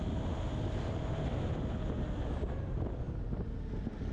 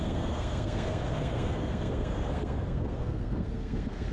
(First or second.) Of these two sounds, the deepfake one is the second